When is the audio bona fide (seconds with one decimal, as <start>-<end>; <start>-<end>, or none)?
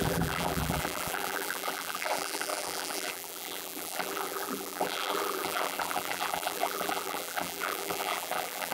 none